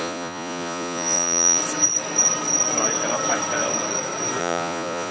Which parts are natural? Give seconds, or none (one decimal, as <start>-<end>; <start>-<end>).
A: 1.6-4.4